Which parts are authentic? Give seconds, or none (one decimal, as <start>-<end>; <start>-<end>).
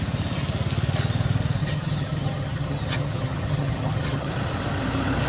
0.0-1.6; 4.3-5.3